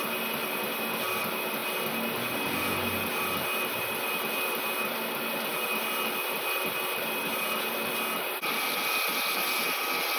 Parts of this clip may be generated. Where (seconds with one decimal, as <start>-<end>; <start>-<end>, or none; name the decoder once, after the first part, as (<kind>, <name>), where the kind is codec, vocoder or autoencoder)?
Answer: none